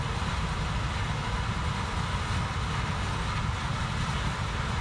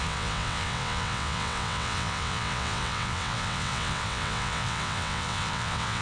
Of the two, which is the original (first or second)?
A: first